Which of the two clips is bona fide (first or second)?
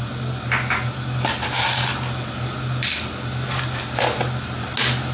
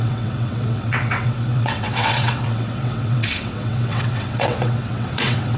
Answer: first